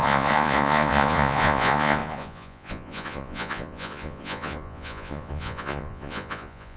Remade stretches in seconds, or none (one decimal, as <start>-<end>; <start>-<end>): 0.0-6.8